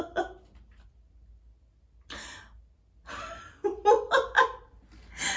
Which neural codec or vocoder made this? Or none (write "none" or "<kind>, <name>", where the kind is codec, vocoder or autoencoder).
none